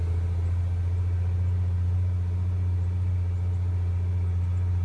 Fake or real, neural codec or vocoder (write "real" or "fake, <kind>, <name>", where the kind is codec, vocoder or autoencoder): real